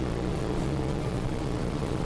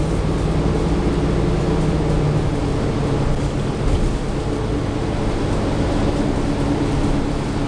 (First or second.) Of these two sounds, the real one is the second